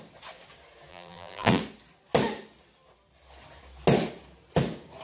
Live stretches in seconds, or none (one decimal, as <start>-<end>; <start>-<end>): 0.0-0.9; 1.6-5.0